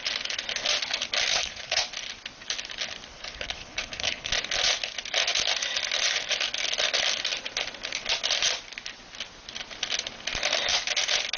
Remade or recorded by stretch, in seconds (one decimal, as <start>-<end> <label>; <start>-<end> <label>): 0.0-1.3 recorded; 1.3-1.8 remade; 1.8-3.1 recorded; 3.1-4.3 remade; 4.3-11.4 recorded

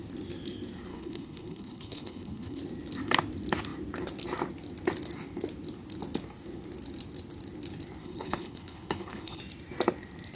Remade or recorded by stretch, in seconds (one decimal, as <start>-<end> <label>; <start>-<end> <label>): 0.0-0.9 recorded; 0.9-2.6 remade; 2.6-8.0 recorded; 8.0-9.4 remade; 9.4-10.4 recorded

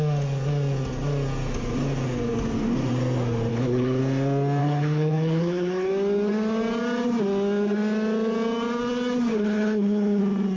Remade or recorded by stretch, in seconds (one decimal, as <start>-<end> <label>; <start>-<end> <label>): 0.0-3.5 recorded; 3.5-4.0 remade; 4.0-4.6 recorded; 4.6-5.9 remade; 5.9-9.3 recorded; 9.3-10.2 remade; 10.2-10.6 recorded

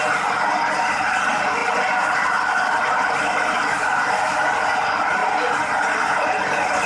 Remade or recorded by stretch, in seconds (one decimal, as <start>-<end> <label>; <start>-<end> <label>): 0.0-6.9 recorded